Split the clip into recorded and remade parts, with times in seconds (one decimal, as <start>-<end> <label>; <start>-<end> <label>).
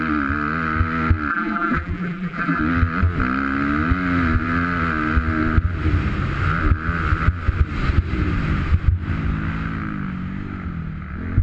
0.0-1.3 recorded; 1.3-2.6 remade; 2.6-11.4 recorded